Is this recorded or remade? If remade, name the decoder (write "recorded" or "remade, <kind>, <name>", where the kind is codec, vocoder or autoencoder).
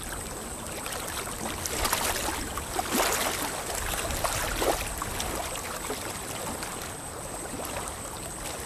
recorded